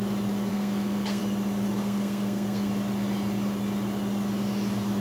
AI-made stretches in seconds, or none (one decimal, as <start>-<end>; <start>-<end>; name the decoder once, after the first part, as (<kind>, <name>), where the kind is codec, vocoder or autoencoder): 0.5-1.2 (codec, SNAC); 1.8-2.7